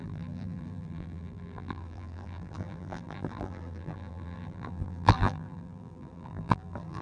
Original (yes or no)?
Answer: no